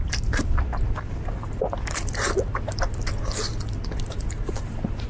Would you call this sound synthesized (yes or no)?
no